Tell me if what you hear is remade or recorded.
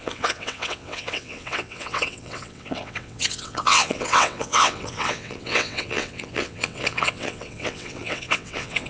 remade